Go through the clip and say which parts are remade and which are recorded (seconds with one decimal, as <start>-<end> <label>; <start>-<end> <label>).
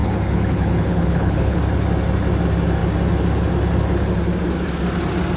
0.0-1.6 remade; 1.6-5.4 recorded